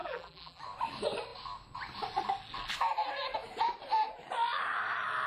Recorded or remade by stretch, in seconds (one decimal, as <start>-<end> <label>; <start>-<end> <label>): 0.0-0.6 remade; 0.6-5.3 recorded